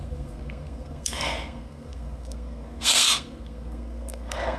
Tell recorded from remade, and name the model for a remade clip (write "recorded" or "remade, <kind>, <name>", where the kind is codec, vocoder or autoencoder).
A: remade, codec, SNAC